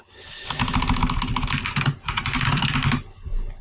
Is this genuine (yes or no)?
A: yes